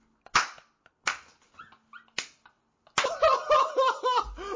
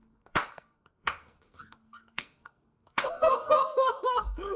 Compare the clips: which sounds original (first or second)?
first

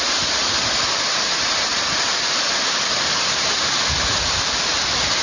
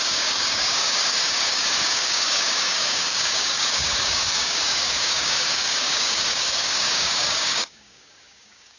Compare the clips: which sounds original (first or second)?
first